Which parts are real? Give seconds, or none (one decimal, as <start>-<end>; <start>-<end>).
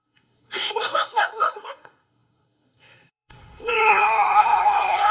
none